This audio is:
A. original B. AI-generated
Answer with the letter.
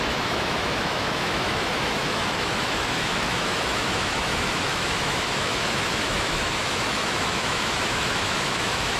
B